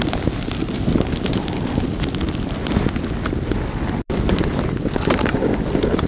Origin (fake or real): real